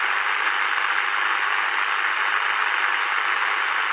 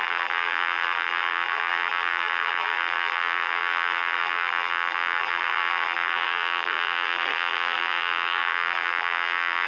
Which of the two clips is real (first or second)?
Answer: first